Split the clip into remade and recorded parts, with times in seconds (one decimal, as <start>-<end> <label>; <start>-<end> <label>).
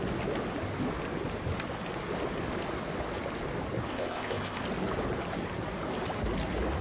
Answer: 0.0-3.9 recorded; 3.9-4.6 remade; 4.6-6.8 recorded